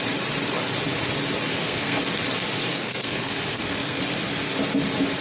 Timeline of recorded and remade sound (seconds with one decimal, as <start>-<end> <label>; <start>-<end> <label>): 0.0-1.5 recorded; 1.5-2.0 remade; 2.0-2.7 recorded; 2.7-4.0 remade; 4.0-5.2 recorded